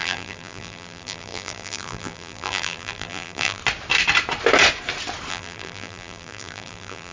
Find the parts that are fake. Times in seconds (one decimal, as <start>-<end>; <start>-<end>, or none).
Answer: 0.0-3.6; 5.3-7.1